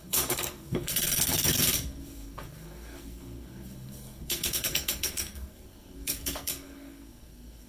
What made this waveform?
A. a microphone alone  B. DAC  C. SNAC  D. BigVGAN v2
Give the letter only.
C